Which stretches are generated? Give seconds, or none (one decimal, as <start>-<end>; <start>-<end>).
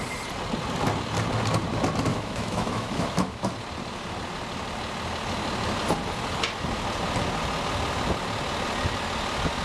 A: 2.1-3.5